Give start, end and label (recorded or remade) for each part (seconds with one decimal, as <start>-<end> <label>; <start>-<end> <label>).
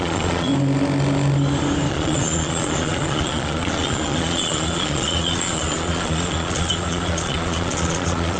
0.0-0.5 remade; 0.5-1.9 recorded; 1.9-8.4 remade